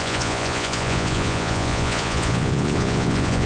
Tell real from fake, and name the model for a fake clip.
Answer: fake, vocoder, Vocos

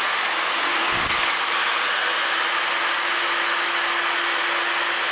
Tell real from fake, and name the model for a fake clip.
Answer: real